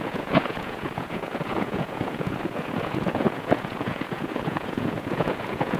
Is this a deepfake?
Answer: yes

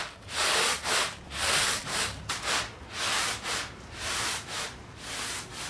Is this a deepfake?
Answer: no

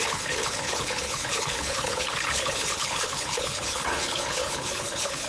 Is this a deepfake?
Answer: yes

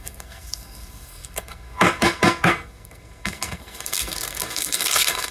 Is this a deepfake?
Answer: yes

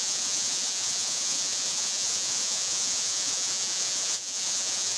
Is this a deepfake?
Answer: yes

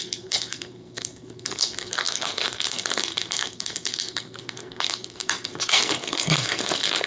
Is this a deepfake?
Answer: yes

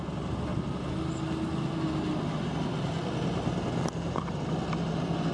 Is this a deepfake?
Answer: no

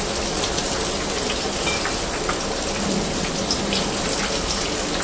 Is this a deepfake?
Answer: no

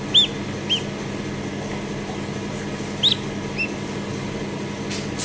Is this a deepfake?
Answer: no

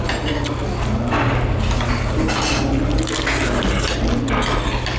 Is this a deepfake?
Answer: no